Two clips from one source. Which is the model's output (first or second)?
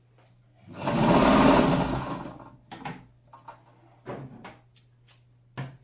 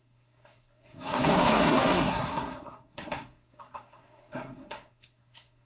second